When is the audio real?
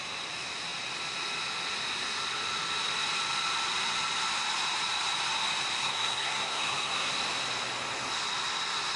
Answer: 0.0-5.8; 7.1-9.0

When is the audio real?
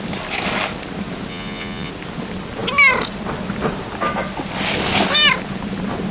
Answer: 0.0-1.3; 1.9-6.1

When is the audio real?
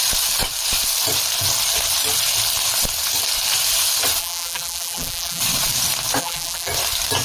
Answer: 0.0-4.2; 5.4-6.2; 6.7-7.2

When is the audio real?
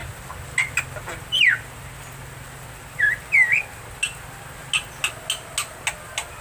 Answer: 0.0-6.4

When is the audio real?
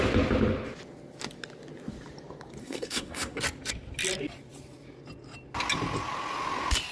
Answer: 0.0-2.6; 3.4-6.9